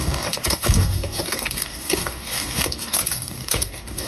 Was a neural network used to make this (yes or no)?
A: yes